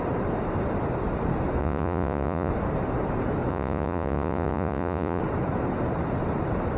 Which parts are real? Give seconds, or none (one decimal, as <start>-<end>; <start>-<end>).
0.0-1.6; 2.5-3.5; 5.2-6.8